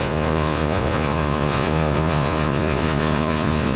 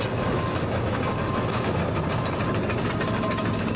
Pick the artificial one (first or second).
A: first